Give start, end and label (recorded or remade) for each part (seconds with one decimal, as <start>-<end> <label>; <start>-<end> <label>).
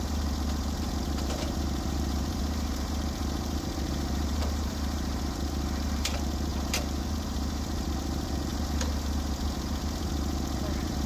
0.0-11.1 remade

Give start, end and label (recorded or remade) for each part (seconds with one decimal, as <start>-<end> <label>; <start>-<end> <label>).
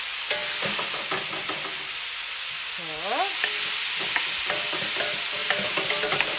0.0-5.4 recorded; 5.4-6.4 remade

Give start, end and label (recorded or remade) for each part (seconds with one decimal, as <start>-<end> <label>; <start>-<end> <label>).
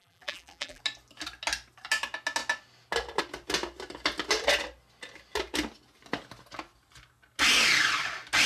0.0-0.8 remade; 0.8-8.5 recorded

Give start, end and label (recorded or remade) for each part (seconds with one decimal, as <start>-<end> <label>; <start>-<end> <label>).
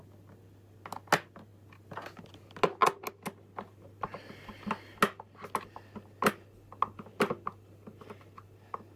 0.0-9.0 recorded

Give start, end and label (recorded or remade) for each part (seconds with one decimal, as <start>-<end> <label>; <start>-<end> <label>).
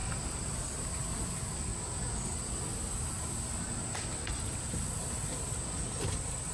0.0-6.5 recorded